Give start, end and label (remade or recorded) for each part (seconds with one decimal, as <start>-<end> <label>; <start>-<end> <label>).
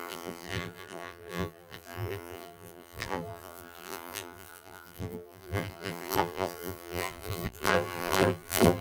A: 0.0-8.8 remade